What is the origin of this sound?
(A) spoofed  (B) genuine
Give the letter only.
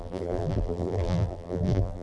A